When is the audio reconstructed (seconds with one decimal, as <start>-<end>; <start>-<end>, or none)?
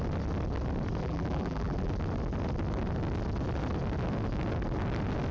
1.0-1.9